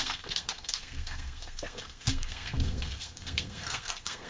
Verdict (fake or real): fake